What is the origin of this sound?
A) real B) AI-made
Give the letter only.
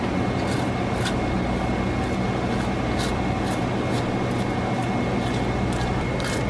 A